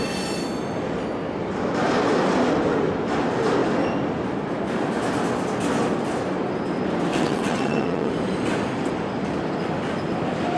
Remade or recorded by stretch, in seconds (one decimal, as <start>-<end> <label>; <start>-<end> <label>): 0.0-7.1 recorded; 7.1-8.1 remade; 8.1-10.6 recorded